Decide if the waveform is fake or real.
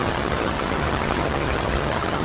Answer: fake